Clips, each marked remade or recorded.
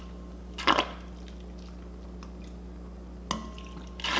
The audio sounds recorded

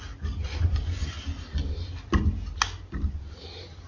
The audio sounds recorded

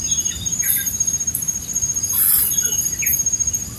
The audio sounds recorded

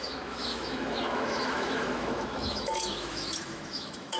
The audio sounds remade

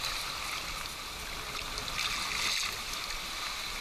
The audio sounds recorded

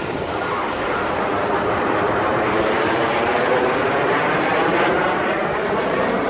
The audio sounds remade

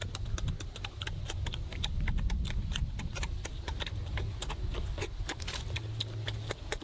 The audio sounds recorded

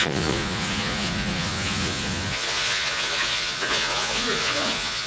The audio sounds remade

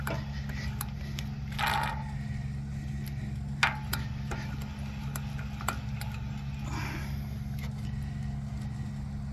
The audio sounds recorded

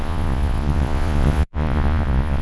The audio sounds remade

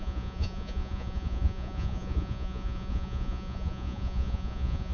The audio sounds remade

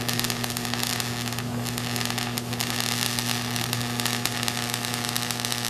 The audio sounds recorded